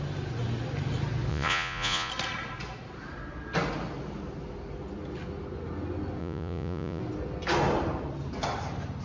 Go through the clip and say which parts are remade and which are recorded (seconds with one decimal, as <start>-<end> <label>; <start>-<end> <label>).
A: 0.0-1.3 recorded; 1.3-2.1 remade; 2.1-6.2 recorded; 6.2-7.0 remade; 7.0-9.0 recorded